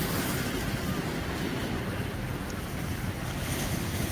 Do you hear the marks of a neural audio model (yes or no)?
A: no